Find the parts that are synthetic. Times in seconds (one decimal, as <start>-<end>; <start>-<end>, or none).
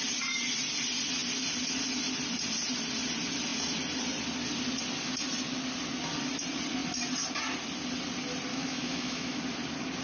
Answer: 8.5-9.4